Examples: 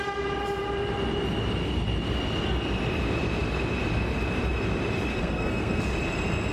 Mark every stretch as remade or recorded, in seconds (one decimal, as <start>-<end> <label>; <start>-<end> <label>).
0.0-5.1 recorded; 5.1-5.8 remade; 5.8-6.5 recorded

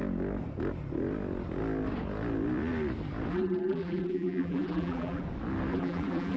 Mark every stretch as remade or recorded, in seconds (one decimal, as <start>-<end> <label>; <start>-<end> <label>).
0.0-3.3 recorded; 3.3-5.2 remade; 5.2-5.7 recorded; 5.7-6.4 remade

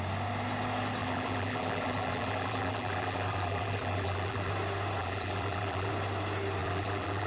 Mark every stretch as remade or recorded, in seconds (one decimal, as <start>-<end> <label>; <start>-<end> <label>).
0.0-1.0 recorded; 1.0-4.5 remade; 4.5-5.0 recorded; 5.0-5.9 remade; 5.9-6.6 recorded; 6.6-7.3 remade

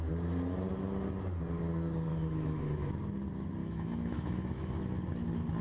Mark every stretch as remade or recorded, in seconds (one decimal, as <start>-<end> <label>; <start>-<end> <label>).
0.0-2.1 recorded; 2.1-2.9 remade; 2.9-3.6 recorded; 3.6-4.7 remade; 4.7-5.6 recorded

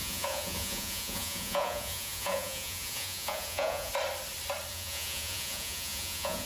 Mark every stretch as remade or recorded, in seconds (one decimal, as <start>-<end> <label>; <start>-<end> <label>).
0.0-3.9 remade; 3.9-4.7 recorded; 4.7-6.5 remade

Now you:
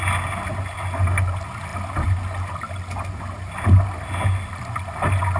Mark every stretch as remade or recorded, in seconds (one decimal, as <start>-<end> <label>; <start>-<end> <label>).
0.0-5.4 recorded